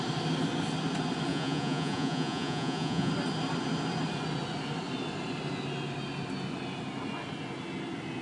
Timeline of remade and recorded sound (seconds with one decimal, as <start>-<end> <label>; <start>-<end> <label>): 0.0-1.3 recorded; 1.3-3.1 remade; 3.1-8.2 recorded